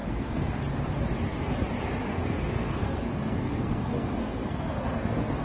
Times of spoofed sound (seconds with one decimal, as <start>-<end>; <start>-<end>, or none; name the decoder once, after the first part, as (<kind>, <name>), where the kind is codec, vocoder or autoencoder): 0.0-0.6 (codec, SNAC); 2.0-5.4